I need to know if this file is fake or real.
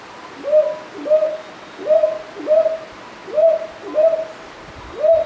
real